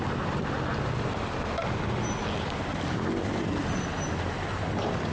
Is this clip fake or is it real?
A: real